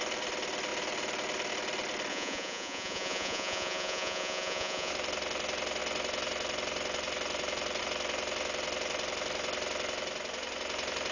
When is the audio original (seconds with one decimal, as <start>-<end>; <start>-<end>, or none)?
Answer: 0.0-2.1; 4.9-11.1

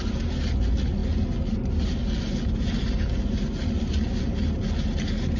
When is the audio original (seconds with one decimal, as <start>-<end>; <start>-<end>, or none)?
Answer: 0.0-5.4

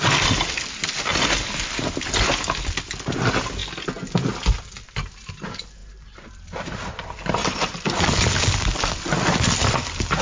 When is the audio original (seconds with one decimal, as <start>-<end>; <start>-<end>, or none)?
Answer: 0.0-5.8

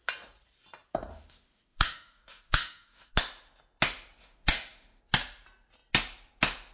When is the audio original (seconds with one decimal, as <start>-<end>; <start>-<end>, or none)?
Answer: 0.0-1.1; 3.1-4.2; 5.0-6.7

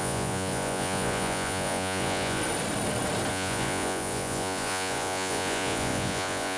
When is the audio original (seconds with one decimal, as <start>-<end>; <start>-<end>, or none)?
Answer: 2.4-3.3

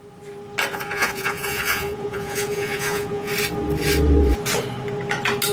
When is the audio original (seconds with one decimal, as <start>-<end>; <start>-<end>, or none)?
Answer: 0.0-0.7; 3.3-5.5

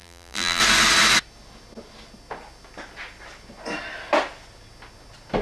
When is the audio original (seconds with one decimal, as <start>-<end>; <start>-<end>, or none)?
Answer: 0.6-5.4

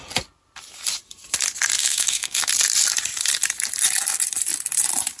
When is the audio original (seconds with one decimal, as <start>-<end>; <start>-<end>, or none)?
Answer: 0.0-1.8; 2.5-5.2